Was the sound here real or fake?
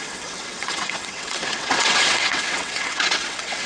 fake